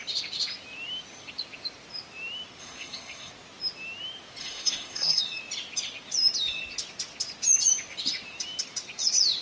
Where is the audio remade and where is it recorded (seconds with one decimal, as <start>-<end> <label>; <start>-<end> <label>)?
0.0-2.6 recorded; 2.6-3.3 remade; 3.3-4.4 recorded; 4.4-5.2 remade; 5.2-9.4 recorded